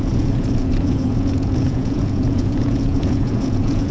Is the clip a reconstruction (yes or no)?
yes